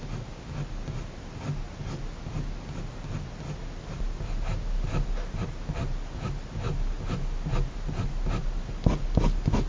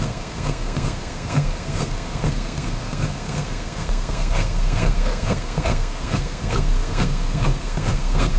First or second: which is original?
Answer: first